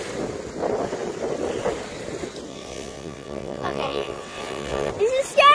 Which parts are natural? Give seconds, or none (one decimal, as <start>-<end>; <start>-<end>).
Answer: 0.0-2.5; 4.9-5.5